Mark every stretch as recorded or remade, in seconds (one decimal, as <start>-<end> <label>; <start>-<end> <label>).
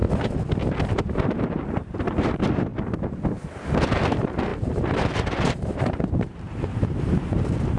0.0-1.0 recorded; 1.0-2.7 remade; 2.7-4.0 recorded; 4.0-7.8 remade